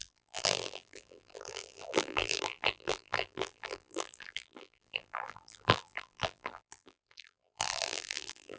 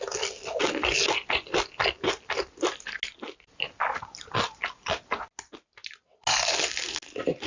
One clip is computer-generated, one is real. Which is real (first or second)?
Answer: second